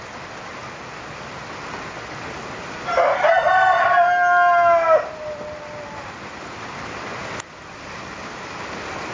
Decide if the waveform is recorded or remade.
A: recorded